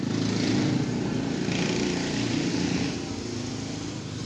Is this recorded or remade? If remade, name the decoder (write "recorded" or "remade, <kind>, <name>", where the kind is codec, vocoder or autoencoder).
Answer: recorded